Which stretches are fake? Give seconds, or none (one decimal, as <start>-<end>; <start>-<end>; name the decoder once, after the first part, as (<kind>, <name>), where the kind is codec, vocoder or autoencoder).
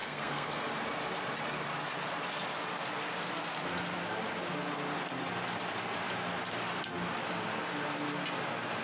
0.0-0.7 (codec, SNAC)